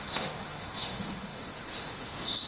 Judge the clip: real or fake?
fake